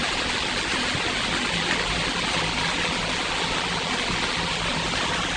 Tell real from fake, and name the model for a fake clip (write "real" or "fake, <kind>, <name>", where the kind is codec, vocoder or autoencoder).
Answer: fake, vocoder, BigVGAN v2